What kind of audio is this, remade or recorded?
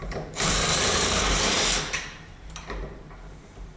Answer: remade